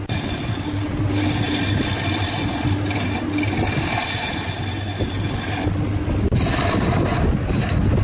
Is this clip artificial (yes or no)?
no